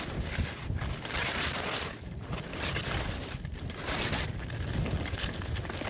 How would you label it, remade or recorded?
recorded